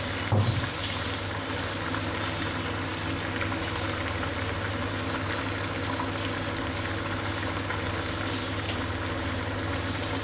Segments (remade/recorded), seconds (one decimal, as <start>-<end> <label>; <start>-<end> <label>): 0.0-10.2 recorded